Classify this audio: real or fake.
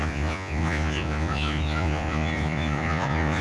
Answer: fake